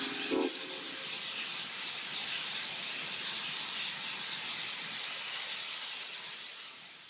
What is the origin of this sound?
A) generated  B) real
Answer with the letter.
B